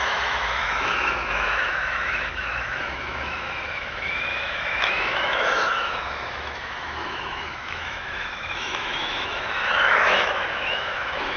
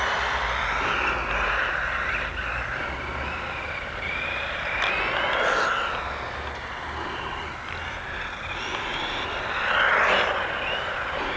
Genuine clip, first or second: second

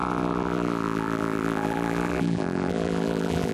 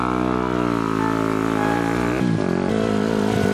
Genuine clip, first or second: second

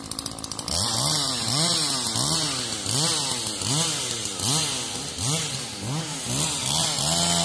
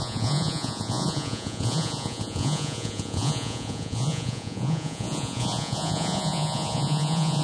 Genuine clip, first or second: first